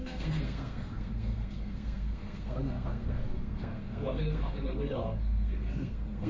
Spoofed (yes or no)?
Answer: yes